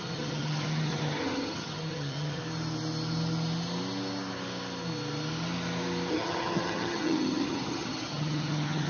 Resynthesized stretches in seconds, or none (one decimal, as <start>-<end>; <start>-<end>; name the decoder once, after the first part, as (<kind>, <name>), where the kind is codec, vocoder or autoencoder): 0.0-2.4 (vocoder, HiFi-GAN); 6.1-8.9